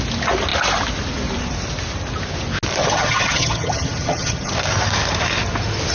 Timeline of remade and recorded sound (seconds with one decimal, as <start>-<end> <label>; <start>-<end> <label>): 0.0-2.8 recorded; 2.8-4.5 remade; 4.5-5.9 recorded